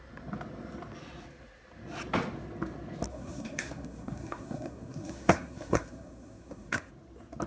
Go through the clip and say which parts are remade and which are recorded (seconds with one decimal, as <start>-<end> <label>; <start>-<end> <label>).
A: 0.0-3.1 recorded; 3.1-6.9 remade; 6.9-7.5 recorded